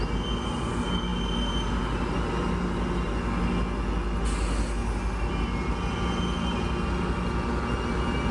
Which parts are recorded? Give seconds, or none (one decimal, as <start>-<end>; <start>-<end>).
0.0-8.3